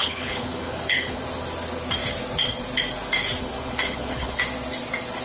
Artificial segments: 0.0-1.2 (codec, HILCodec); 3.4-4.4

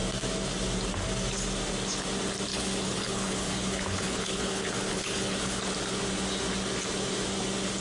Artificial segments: 2.5-5.6 (codec, HILCodec)